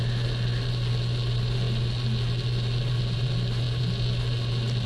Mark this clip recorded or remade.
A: recorded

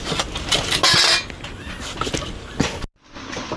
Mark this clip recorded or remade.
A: recorded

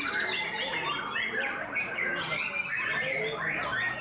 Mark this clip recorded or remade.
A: recorded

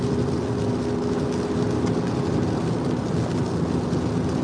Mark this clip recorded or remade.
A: recorded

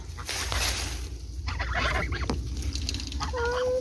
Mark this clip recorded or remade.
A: recorded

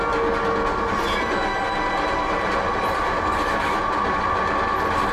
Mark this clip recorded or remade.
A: recorded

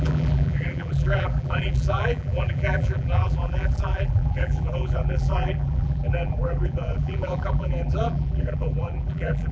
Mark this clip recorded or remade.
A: remade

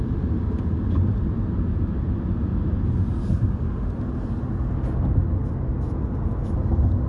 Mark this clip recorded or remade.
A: recorded